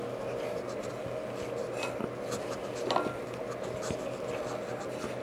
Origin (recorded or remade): recorded